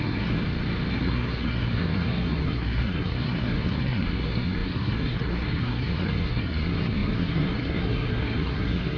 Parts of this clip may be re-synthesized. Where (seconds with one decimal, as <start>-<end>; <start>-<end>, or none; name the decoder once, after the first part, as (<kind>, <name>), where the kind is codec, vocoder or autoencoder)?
0.0-0.4 (codec, SNAC); 0.9-9.0